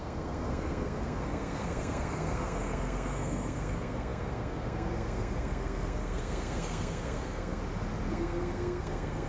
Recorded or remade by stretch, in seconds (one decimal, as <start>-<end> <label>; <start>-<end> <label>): 0.0-7.6 remade; 7.6-8.1 recorded; 8.1-9.3 remade